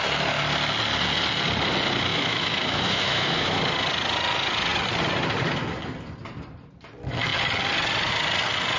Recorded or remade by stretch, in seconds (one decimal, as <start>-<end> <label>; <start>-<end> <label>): 0.0-2.1 recorded; 2.1-3.6 remade; 3.6-8.8 recorded